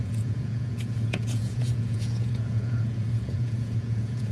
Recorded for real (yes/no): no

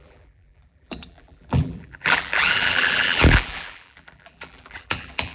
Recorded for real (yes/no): no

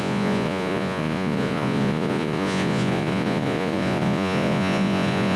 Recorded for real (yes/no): no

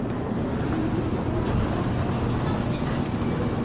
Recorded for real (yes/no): yes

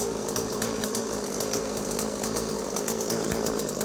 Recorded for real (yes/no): no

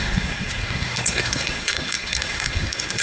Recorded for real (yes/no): no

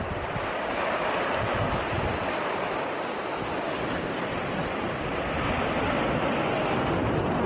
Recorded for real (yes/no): yes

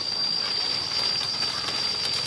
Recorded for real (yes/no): yes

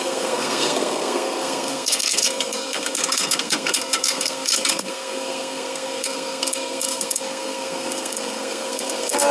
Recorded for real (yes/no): no